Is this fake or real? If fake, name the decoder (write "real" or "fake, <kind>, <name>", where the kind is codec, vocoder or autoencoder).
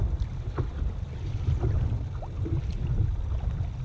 real